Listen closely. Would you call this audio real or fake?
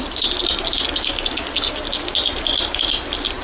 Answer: real